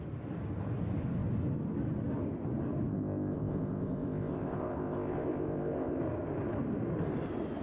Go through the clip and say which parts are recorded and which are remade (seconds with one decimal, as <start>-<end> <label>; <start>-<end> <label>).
0.0-2.9 recorded; 2.9-6.0 remade; 6.0-7.6 recorded